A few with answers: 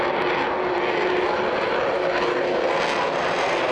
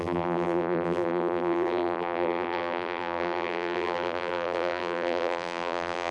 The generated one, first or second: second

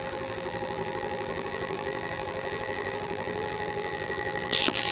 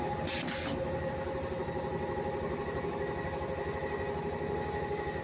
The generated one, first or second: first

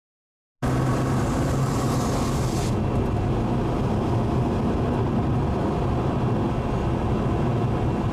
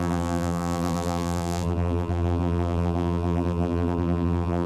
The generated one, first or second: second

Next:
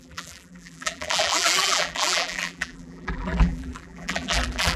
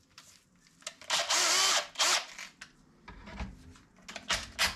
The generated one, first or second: first